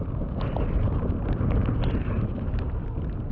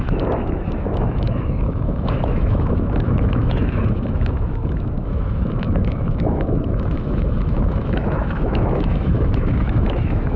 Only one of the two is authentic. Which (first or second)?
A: first